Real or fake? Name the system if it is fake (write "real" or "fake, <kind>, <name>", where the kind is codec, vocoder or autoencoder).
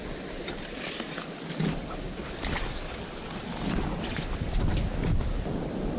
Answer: real